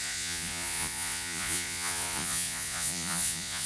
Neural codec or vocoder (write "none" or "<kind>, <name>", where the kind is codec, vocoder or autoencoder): vocoder, Vocos